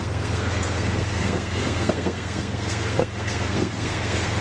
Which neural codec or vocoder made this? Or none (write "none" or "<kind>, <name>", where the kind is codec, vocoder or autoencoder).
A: codec, SNAC